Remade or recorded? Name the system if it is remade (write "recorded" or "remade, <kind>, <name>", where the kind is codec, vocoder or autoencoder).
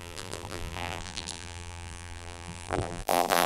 remade, vocoder, BigVGAN v2